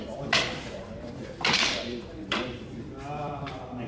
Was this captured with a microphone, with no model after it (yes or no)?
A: no